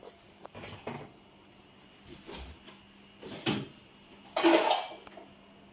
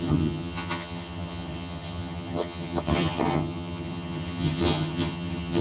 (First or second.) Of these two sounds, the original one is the first